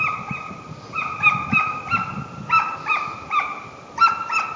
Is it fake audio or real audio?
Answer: real